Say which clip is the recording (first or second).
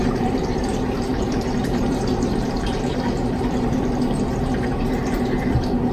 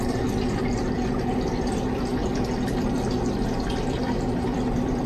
second